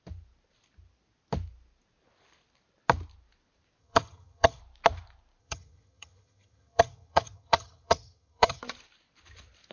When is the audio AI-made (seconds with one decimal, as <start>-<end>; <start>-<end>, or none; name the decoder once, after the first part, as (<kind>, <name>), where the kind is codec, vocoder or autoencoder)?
3.8-4.6 (vocoder, HiFi-GAN); 5.4-8.6